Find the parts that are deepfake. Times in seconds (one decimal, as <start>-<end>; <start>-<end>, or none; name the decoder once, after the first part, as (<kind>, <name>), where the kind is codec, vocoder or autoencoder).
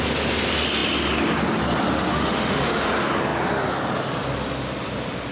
2.1-2.9 (autoencoder, DAC-VAE)